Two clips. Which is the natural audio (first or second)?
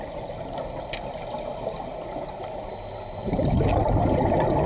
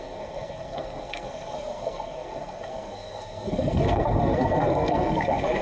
first